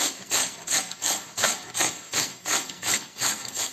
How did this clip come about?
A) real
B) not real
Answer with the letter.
B